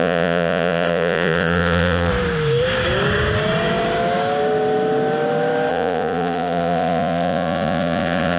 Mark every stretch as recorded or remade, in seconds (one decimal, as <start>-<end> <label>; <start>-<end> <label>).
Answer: 0.0-2.1 remade; 2.1-5.7 recorded; 5.7-8.4 remade